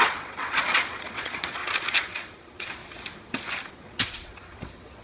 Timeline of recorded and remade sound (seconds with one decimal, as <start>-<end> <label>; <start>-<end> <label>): 0.0-1.6 remade; 1.6-2.1 recorded; 2.1-2.8 remade; 2.8-3.7 recorded; 3.7-5.0 remade